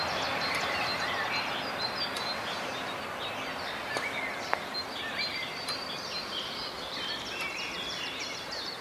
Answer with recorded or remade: recorded